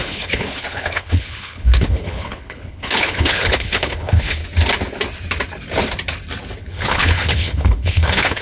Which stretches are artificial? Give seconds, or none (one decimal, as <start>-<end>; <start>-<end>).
0.0-4.4; 6.6-8.4